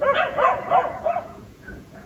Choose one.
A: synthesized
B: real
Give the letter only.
A